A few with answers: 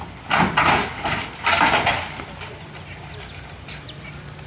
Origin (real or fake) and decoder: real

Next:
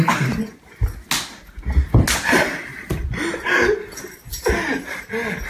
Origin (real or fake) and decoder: real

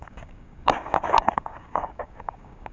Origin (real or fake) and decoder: fake, codec, DAC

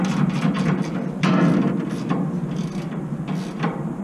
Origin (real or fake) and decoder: real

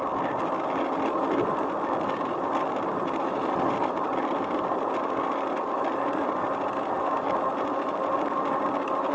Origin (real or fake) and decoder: real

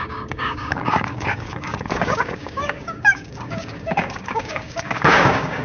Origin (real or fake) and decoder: fake, codec, DAC